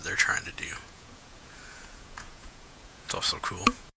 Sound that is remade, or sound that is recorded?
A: remade